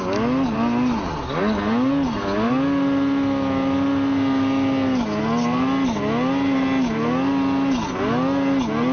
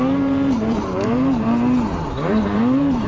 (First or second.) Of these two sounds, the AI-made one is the second